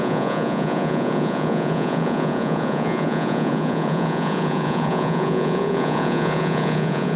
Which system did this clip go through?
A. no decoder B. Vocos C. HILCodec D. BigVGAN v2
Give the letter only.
B